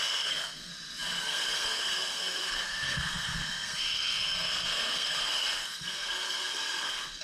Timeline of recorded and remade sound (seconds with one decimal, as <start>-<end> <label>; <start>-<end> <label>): 0.0-0.7 remade; 0.7-1.2 recorded; 1.2-7.2 remade